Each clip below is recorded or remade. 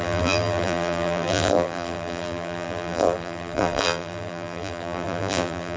remade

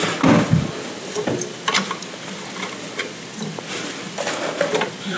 recorded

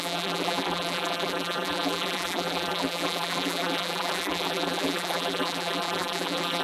remade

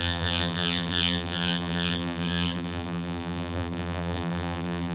remade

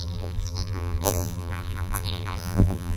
remade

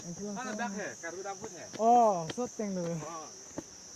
recorded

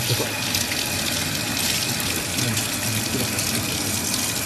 recorded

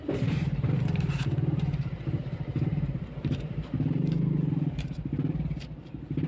remade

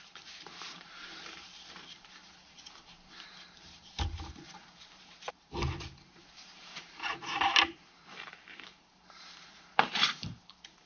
remade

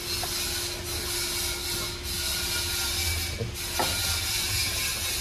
recorded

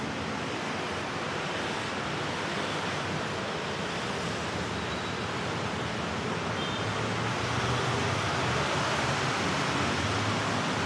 recorded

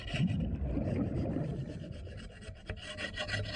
recorded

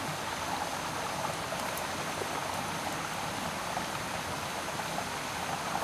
recorded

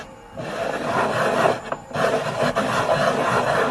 recorded